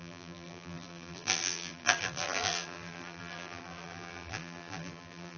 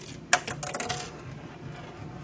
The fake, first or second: first